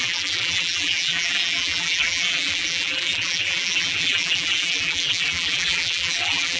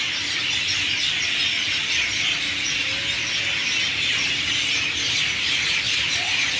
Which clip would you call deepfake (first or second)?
first